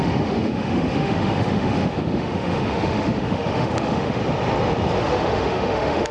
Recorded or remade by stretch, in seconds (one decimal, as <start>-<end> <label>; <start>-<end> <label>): 0.0-4.2 remade; 4.2-5.0 recorded; 5.0-6.1 remade